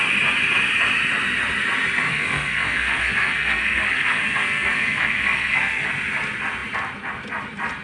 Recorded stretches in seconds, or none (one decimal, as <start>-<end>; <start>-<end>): 0.0-2.1; 5.9-7.8